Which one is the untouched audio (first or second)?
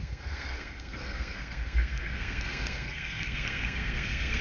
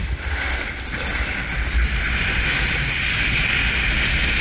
second